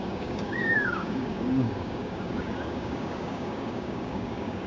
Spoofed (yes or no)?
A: yes